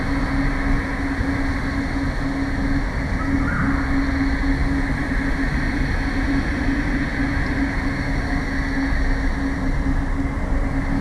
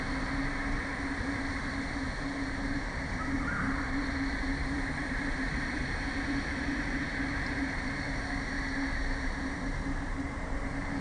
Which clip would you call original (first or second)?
first